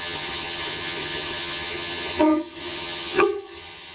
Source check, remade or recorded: remade